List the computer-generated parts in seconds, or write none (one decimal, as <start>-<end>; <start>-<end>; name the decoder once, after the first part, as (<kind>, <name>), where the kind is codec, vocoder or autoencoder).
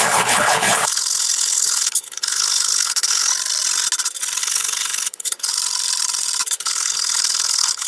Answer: 0.0-3.3 (codec, HILCodec); 4.4-5.5; 6.6-7.9